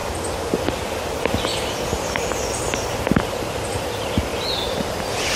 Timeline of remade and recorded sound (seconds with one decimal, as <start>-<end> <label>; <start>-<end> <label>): 0.0-0.5 remade; 0.5-5.4 recorded

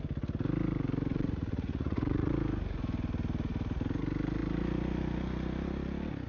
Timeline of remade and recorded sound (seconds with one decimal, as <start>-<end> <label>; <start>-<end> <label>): 0.0-1.1 recorded; 1.1-2.3 remade; 2.3-6.3 recorded

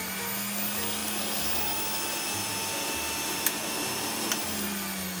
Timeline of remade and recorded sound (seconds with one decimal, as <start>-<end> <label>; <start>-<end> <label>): 0.0-5.2 recorded

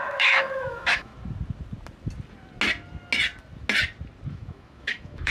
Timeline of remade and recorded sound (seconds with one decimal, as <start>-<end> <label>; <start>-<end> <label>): 0.0-1.1 remade; 1.1-4.3 recorded; 4.3-5.3 remade

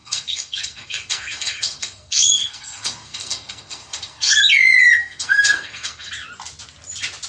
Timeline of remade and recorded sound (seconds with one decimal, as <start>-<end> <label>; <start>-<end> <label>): 0.0-4.4 remade; 4.4-5.0 recorded; 5.0-6.1 remade; 6.1-7.3 recorded

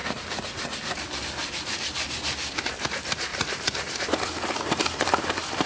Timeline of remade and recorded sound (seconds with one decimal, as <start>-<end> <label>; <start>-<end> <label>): 0.0-1.2 recorded; 1.2-5.7 remade

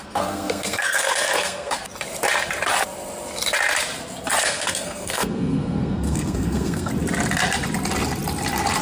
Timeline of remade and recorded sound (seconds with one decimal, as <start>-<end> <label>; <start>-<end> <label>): 0.0-1.8 remade; 1.8-4.4 recorded; 4.4-6.9 remade; 6.9-8.8 recorded